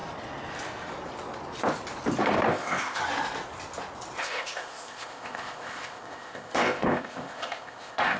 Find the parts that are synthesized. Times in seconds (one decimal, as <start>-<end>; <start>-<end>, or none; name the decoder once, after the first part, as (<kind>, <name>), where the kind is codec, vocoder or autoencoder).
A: 2.5-3.0 (codec, ZipCodec); 4.2-8.2